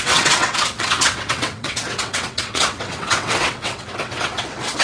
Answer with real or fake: fake